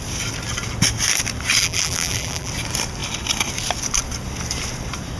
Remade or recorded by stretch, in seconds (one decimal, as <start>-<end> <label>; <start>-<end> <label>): 0.0-1.6 recorded; 1.6-2.5 remade; 2.5-5.2 recorded